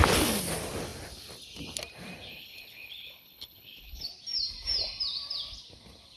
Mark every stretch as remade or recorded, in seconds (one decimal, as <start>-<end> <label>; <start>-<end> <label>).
0.0-2.3 recorded; 2.3-4.1 remade; 4.1-6.2 recorded